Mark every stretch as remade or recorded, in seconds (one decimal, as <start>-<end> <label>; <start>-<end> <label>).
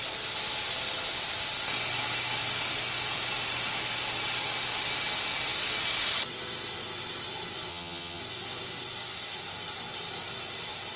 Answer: 0.0-7.7 recorded; 7.7-8.2 remade; 8.2-11.0 recorded